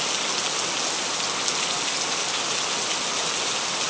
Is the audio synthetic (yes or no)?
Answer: no